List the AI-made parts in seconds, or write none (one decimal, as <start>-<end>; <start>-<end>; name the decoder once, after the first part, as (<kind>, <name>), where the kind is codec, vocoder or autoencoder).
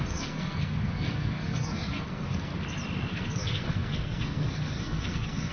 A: 0.0-2.5 (codec, SNAC); 3.1-5.5